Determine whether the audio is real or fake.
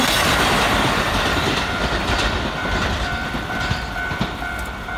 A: fake